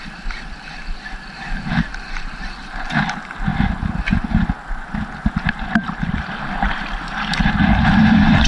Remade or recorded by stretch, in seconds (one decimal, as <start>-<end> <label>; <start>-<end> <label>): 0.0-8.5 recorded